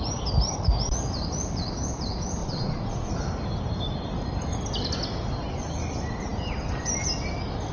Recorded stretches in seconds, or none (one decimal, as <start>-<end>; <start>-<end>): 0.0-2.4; 3.1-7.7